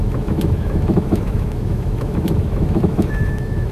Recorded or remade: remade